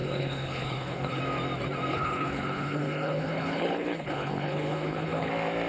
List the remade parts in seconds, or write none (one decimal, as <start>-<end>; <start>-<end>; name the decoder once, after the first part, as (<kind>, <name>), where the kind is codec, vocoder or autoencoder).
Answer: 0.0-1.2 (codec, HILCodec); 1.9-5.3